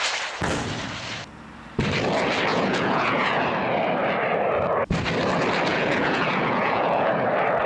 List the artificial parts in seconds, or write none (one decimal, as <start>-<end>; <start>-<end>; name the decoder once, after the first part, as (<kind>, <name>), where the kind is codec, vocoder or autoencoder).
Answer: 2.5-3.4 (vocoder, Vocos); 5.7-7.1

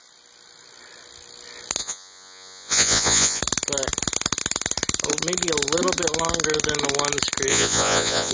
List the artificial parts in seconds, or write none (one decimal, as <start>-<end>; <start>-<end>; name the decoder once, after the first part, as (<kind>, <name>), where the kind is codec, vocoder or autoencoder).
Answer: 1.8-3.4 (vocoder, Vocos); 7.5-8.3

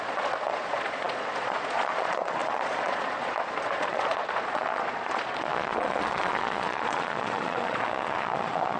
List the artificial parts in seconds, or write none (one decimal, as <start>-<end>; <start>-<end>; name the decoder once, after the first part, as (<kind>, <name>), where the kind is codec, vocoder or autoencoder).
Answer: 0.0-8.8 (vocoder, Vocos)

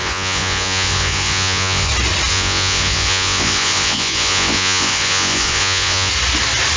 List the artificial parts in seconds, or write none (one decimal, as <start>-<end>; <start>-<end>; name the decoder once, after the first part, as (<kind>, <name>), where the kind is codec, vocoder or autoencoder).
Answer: 0.0-1.9 (vocoder, Vocos); 2.3-6.1